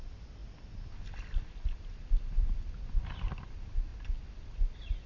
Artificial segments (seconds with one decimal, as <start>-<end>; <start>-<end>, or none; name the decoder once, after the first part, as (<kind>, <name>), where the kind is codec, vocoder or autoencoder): none